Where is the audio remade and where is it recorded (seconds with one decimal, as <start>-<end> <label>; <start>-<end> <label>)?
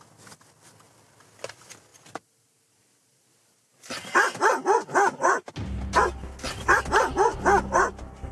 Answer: 0.0-8.3 recorded